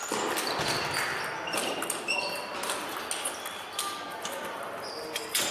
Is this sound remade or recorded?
recorded